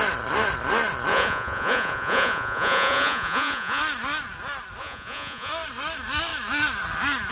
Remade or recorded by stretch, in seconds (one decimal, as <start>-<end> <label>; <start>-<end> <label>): 0.0-1.1 recorded; 1.1-3.8 remade; 3.8-4.8 recorded; 4.8-5.5 remade; 5.5-7.3 recorded